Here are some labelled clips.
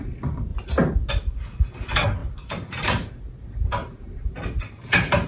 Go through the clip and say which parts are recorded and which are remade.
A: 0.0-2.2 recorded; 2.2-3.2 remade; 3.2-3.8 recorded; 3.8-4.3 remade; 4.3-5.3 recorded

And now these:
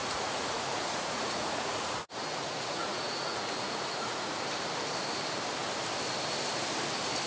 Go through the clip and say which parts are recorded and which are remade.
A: 0.0-4.4 remade; 4.4-7.3 recorded

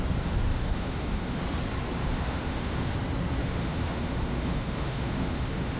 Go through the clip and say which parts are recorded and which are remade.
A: 0.0-0.5 recorded; 0.5-1.4 remade; 1.4-2.0 recorded; 2.0-2.9 remade; 2.9-3.4 recorded; 3.4-5.8 remade

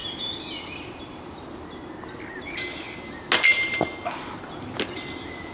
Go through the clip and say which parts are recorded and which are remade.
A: 0.0-5.5 recorded

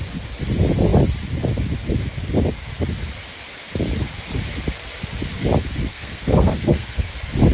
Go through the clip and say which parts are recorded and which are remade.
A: 0.0-5.9 recorded; 5.9-7.1 remade; 7.1-7.5 recorded

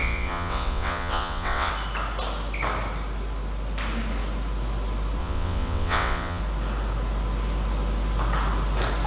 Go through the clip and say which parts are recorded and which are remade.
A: 0.0-1.7 remade; 1.7-5.2 recorded; 5.2-6.4 remade; 6.4-9.1 recorded

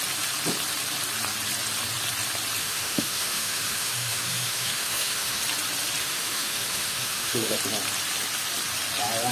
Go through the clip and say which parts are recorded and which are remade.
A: 0.0-2.6 recorded; 2.6-5.4 remade; 5.4-6.0 recorded; 6.0-7.6 remade; 7.6-9.3 recorded

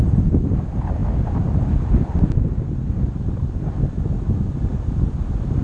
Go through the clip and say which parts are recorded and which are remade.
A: 0.0-5.6 recorded